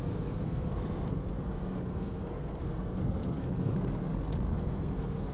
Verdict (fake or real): fake